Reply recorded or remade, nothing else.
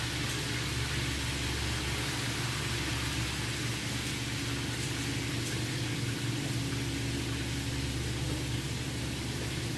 recorded